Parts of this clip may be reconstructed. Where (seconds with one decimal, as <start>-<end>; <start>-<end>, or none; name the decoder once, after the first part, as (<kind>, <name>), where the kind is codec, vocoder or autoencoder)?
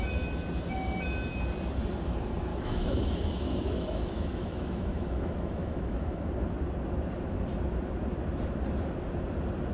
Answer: 2.5-6.3 (autoencoder, DAC-VAE)